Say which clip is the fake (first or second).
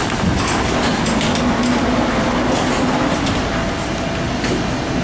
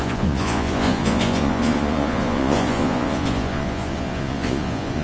second